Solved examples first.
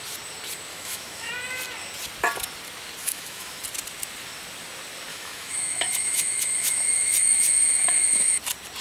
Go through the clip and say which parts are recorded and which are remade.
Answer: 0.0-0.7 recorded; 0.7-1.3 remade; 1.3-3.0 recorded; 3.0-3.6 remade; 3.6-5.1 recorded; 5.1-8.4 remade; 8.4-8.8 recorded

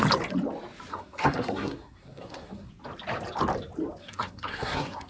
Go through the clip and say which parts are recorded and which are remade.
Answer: 0.0-0.9 recorded; 0.9-2.7 remade; 2.7-4.0 recorded; 4.0-5.1 remade

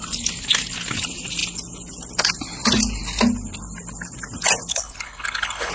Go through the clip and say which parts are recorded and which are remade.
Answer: 0.0-4.7 recorded; 4.7-5.7 remade

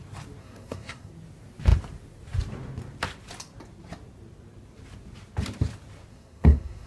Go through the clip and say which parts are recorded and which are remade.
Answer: 0.0-0.4 recorded; 0.4-1.1 remade; 1.1-6.1 recorded; 6.1-6.9 remade

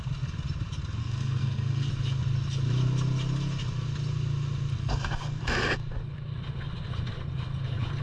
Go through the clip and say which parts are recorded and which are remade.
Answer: 0.0-1.0 recorded; 1.0-1.9 remade; 1.9-4.8 recorded; 4.8-5.4 remade; 5.4-8.0 recorded

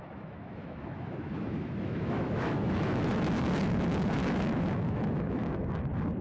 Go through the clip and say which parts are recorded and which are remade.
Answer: 0.0-4.2 remade; 4.2-4.7 recorded; 4.7-5.4 remade; 5.4-6.2 recorded